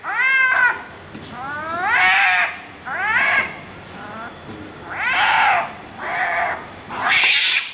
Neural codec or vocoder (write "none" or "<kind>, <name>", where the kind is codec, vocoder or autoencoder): none